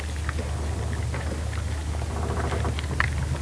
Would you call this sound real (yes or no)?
yes